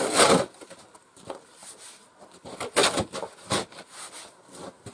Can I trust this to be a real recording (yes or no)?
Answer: yes